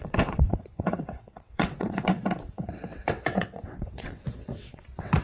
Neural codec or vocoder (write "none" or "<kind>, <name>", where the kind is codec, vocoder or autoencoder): vocoder, WaveNeXt